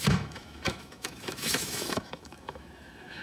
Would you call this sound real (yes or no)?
no